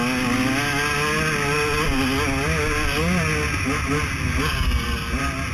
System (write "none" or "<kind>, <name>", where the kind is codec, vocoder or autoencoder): none